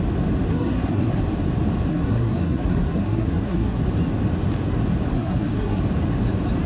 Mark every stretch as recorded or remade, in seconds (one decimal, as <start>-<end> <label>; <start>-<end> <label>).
0.0-0.5 recorded; 0.5-1.2 remade; 1.2-1.9 recorded; 1.9-3.8 remade; 3.8-5.1 recorded; 5.1-5.8 remade; 5.8-6.7 recorded